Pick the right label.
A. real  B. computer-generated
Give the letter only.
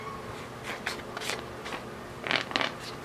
A